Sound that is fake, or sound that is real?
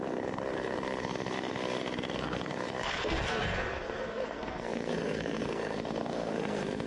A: fake